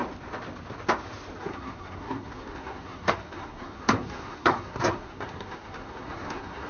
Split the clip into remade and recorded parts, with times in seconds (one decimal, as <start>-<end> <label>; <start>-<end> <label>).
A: 0.0-1.4 recorded; 1.4-6.7 remade